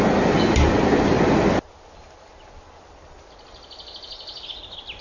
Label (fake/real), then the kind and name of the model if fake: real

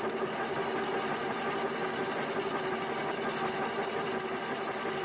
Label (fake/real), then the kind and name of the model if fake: real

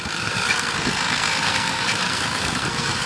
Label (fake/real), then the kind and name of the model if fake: fake, codec, SNAC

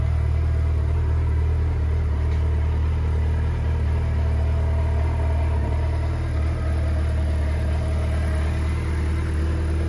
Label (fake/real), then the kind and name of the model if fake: real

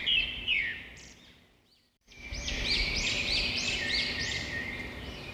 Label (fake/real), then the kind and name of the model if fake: fake, vocoder, BigVGAN v2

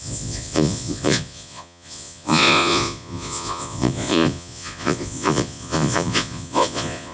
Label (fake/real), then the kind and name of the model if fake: fake, vocoder, Vocos